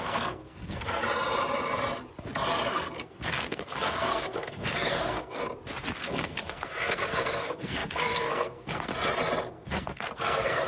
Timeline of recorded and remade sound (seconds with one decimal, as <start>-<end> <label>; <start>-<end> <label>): 0.0-1.0 remade; 1.0-2.7 recorded; 2.7-5.4 remade; 5.4-6.0 recorded; 6.0-8.9 remade; 8.9-9.5 recorded; 9.5-10.7 remade